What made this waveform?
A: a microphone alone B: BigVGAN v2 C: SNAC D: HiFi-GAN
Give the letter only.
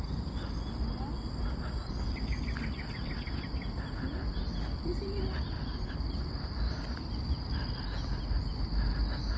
A